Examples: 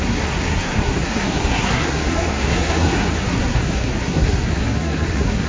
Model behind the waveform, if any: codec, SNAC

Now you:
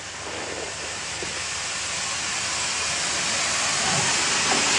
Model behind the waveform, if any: none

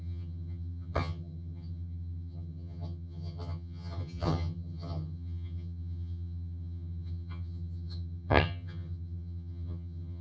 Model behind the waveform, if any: vocoder, HiFi-GAN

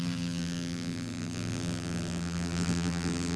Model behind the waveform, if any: vocoder, BigVGAN v2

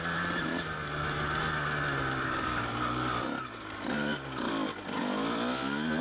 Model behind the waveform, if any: none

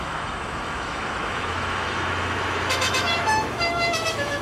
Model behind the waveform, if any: autoencoder, DAC-VAE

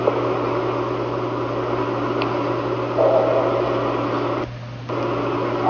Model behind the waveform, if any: none